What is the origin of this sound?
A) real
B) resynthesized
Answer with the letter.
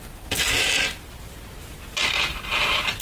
A